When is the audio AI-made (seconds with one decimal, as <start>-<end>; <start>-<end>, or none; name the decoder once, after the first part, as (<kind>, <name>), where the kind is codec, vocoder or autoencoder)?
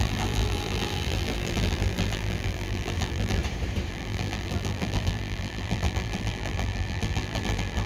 0.0-3.4 (vocoder, BigVGAN v2); 3.9-7.9